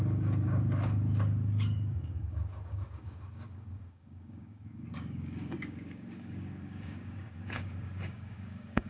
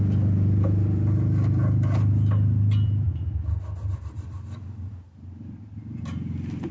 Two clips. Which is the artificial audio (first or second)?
first